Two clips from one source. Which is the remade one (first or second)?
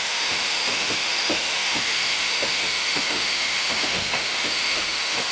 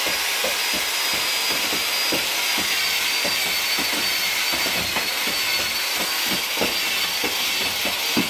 first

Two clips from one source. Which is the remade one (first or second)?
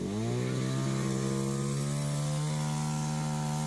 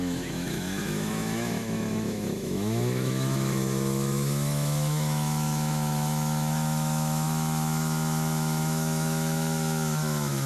second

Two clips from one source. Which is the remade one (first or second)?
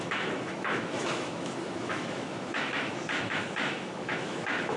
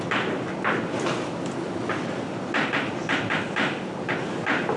first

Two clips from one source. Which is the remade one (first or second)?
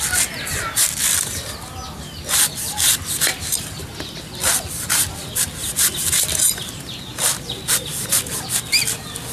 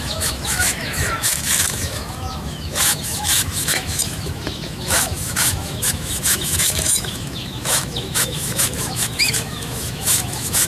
second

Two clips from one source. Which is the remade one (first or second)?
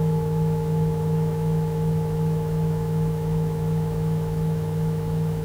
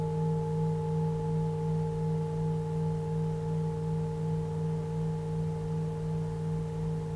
first